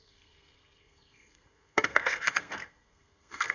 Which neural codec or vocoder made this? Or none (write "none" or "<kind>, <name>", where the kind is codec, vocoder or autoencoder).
codec, SNAC